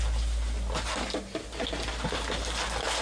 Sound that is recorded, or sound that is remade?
recorded